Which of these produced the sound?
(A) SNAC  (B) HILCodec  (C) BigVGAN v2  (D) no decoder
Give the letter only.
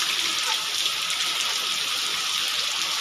D